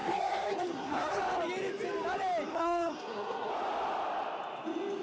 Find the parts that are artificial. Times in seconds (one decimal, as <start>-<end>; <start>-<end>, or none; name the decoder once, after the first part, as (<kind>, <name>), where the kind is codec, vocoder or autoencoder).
0.0-1.2 (codec, SNAC); 2.5-3.5